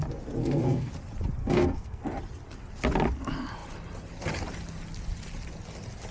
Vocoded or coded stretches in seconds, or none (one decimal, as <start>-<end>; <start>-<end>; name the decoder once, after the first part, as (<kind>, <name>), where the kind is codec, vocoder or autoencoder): 0.4-0.9 (codec, SNAC); 1.4-2.0